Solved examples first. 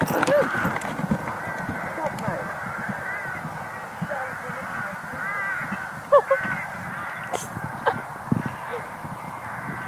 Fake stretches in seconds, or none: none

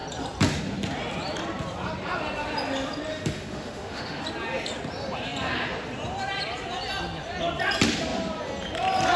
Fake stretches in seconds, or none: 3.1-4.2 (autoencoder, DAC-VAE)